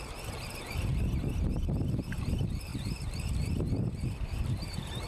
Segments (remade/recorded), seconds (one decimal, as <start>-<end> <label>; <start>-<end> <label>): 0.0-0.9 recorded; 0.9-2.0 remade; 2.0-2.7 recorded; 2.7-5.1 remade